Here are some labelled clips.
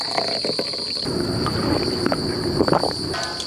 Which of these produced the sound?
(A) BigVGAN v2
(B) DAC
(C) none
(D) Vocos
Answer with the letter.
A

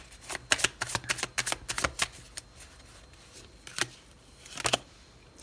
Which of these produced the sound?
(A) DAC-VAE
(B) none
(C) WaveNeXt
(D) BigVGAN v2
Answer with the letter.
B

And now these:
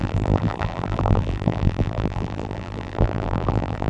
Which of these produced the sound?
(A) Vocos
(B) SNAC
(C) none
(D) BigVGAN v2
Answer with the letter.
D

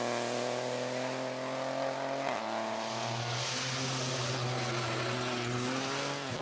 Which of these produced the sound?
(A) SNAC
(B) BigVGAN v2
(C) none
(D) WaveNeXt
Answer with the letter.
C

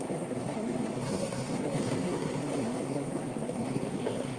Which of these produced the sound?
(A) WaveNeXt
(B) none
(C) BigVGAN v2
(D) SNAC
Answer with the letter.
D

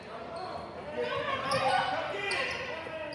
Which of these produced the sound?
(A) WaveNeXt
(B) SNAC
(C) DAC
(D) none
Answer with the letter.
D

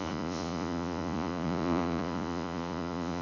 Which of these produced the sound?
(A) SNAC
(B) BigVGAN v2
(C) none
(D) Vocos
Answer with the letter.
D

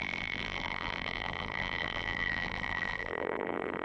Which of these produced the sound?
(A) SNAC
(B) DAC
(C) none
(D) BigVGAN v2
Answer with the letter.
D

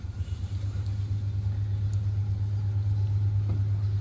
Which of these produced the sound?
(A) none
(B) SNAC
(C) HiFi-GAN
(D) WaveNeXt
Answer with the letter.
A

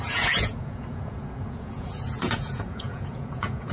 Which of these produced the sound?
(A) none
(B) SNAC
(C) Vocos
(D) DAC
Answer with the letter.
C